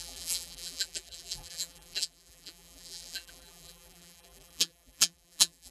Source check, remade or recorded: remade